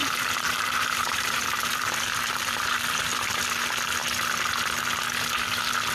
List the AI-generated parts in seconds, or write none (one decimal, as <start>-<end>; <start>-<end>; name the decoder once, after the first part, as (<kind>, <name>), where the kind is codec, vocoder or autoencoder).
0.0-3.4 (vocoder, BigVGAN v2)